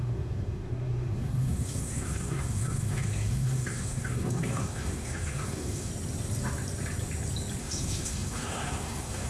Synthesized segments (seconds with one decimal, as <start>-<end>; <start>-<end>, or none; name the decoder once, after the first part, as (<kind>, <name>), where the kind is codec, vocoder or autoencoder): 0.0-5.9 (codec, SNAC); 7.6-9.3